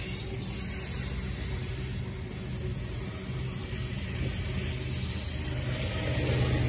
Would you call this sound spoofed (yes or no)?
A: no